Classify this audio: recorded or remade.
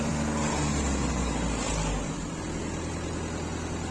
recorded